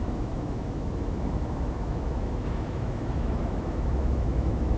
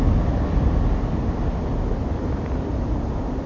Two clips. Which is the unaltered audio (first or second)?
second